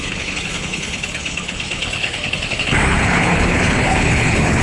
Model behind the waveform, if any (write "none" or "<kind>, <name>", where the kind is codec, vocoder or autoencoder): codec, HILCodec